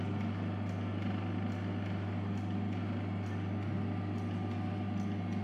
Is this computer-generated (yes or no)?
no